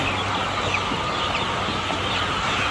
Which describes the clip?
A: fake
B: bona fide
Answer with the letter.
B